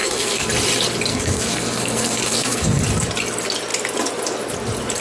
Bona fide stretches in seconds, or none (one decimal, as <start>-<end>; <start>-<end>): 0.5-1.1; 2.8-5.0